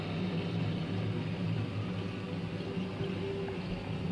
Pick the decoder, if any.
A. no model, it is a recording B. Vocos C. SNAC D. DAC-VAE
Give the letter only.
A